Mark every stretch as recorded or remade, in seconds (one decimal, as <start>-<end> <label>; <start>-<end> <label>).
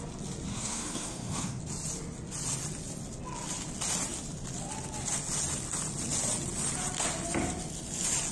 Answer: 0.0-0.5 recorded; 0.5-1.6 remade; 1.6-8.3 recorded